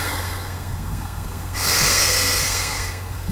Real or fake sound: fake